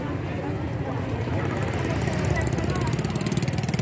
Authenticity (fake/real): real